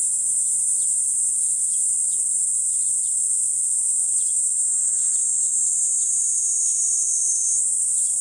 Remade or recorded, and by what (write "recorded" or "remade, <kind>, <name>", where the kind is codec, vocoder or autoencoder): recorded